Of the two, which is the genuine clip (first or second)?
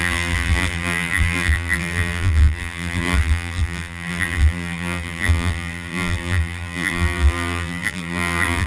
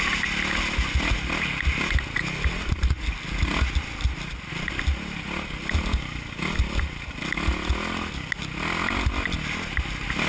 second